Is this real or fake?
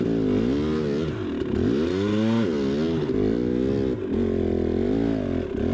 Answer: real